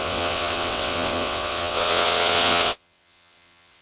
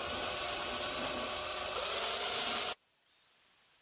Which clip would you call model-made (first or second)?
first